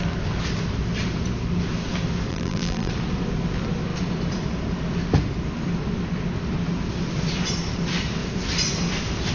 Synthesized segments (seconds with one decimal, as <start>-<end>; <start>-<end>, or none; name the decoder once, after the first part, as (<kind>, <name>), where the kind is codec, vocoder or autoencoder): 2.3-2.9 (vocoder, BigVGAN v2)